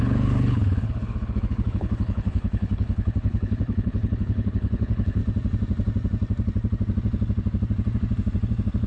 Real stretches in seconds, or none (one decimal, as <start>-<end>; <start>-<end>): 5.2-8.9